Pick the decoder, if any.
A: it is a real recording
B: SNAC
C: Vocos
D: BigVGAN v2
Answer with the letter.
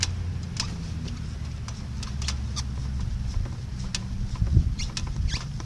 A